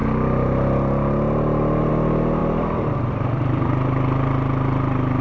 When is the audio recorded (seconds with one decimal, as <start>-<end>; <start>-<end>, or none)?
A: 0.0-2.4